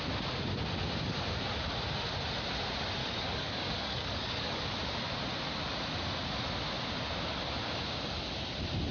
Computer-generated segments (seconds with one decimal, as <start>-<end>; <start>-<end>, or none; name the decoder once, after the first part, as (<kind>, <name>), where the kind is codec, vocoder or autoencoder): 3.0-4.6 (codec, DAC)